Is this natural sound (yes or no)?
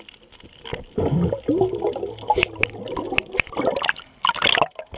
yes